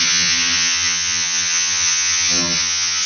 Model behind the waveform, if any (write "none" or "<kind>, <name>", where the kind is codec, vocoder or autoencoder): vocoder, HiFi-GAN